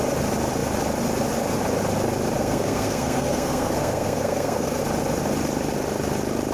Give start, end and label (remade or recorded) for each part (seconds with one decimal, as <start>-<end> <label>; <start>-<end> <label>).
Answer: 0.0-2.4 recorded; 2.4-4.8 remade; 4.8-6.5 recorded